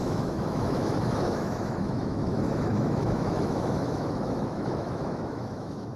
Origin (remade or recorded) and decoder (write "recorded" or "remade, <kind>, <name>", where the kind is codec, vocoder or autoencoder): remade, autoencoder, DAC-VAE